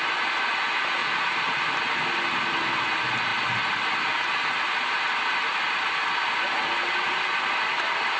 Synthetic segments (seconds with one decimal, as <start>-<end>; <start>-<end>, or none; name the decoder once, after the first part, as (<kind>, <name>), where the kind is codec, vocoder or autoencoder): 1.0-1.7 (vocoder, BigVGAN v2)